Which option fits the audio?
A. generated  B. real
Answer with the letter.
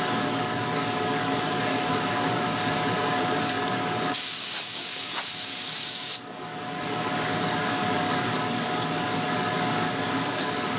A